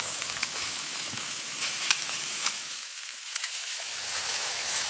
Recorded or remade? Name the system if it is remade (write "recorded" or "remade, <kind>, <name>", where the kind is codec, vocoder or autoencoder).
remade, autoencoder, DAC-VAE